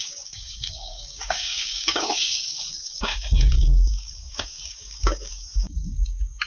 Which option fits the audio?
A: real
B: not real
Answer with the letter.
B